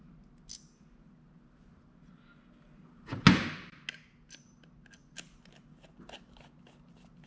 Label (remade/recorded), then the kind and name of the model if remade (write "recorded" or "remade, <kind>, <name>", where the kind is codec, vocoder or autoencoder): recorded